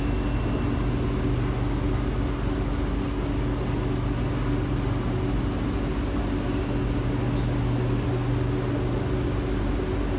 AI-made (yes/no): no